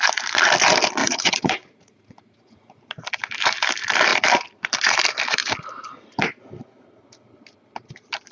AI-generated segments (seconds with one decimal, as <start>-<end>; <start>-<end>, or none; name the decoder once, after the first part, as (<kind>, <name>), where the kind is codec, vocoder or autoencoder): 1.0-2.8 (vocoder, Vocos)